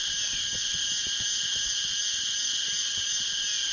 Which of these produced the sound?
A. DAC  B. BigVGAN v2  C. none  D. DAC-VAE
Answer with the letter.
C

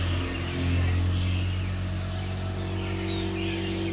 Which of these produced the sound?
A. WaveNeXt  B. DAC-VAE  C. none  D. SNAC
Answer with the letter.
C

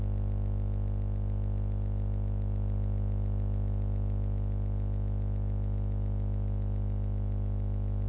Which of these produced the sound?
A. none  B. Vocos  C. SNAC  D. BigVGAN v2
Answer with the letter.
A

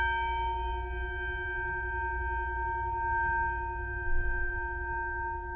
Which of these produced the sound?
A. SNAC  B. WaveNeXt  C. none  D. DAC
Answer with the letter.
C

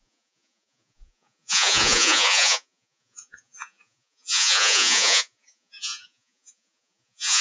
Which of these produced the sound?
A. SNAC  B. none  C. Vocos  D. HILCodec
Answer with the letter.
C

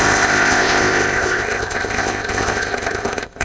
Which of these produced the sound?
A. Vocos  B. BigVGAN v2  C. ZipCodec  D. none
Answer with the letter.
C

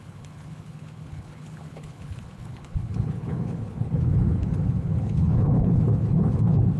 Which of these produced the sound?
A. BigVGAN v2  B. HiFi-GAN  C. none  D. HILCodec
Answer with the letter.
D